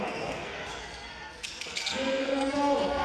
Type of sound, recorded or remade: remade